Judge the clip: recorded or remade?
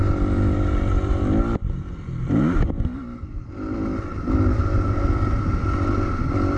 recorded